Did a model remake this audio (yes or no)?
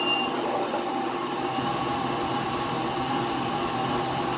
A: no